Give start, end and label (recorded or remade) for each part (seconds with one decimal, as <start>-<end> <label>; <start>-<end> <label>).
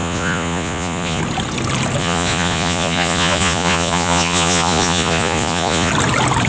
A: 0.0-1.2 remade; 1.2-2.0 recorded; 2.0-5.9 remade; 5.9-6.5 recorded